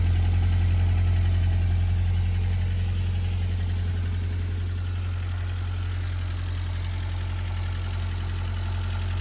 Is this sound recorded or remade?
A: recorded